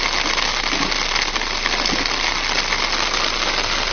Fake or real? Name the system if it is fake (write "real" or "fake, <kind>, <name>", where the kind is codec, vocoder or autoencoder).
real